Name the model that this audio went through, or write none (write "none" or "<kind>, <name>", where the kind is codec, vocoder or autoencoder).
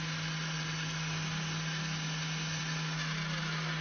none